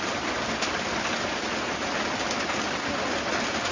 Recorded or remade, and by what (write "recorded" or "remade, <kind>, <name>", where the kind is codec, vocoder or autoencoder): recorded